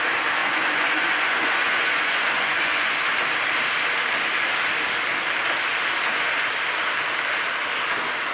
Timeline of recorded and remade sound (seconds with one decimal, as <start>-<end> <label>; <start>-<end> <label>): 0.0-0.4 recorded; 0.4-2.9 remade; 2.9-8.3 recorded